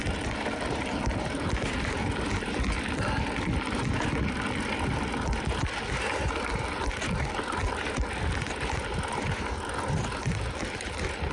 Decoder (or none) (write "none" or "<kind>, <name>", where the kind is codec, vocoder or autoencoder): none